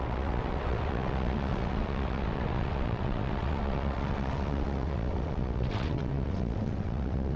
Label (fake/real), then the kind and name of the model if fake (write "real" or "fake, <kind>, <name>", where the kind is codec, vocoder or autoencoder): fake, vocoder, WaveNeXt